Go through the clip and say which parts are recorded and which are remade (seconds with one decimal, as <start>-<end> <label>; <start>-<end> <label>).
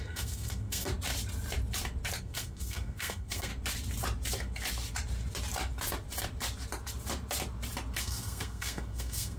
0.0-0.9 remade; 0.9-2.2 recorded; 2.2-3.5 remade; 3.5-8.0 recorded; 8.0-9.4 remade